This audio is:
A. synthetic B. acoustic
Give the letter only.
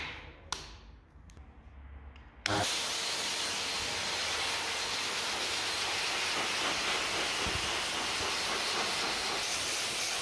B